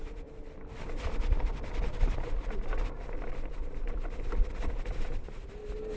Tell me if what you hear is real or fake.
real